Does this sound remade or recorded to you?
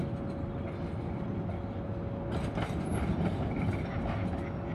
recorded